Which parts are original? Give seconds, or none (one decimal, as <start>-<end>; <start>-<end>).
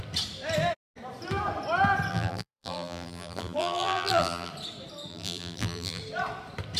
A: 0.0-2.1; 4.5-5.1; 6.0-6.8